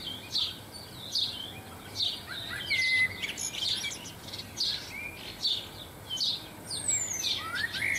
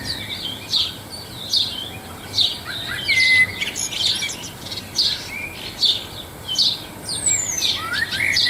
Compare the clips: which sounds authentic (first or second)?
first